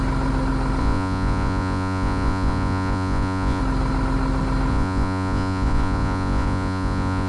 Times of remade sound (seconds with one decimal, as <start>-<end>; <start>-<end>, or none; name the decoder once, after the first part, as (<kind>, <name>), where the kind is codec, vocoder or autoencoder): 0.8-3.6 (vocoder, Vocos); 4.7-7.3